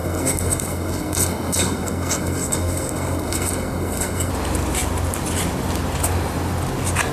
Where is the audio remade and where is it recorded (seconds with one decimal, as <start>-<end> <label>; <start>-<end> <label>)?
0.0-4.3 remade; 4.3-7.1 recorded